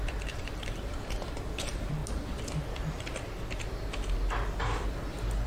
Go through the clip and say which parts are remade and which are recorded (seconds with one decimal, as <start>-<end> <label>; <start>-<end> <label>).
0.0-2.0 remade; 2.0-5.5 recorded

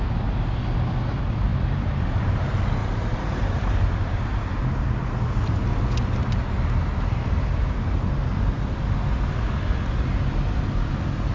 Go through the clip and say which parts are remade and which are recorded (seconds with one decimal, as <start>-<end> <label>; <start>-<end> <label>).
0.0-1.5 recorded; 1.5-2.2 remade; 2.2-2.8 recorded; 2.8-4.2 remade; 4.2-11.3 recorded

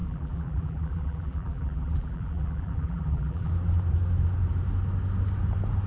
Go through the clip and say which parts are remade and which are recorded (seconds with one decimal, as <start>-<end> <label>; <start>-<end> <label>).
0.0-3.5 remade; 3.5-5.9 recorded

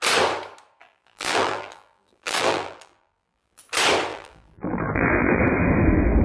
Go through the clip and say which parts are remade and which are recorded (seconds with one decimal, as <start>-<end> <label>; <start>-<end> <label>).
0.0-0.8 recorded; 0.8-3.6 remade; 3.6-4.1 recorded; 4.1-5.4 remade; 5.4-6.2 recorded

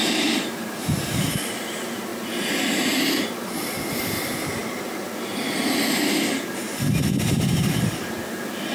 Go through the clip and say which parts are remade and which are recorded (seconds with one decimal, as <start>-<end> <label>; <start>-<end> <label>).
0.0-1.3 remade; 1.3-2.1 recorded; 2.1-3.8 remade; 3.8-8.7 recorded

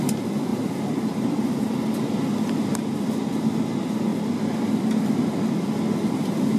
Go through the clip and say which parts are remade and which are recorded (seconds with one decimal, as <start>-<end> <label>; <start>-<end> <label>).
0.0-0.5 recorded; 0.5-1.9 remade; 1.9-6.6 recorded